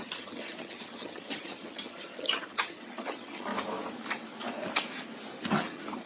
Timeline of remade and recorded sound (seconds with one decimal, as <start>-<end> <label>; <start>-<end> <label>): 0.0-3.5 remade; 3.5-5.5 recorded; 5.5-6.1 remade